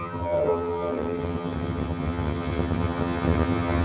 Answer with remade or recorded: remade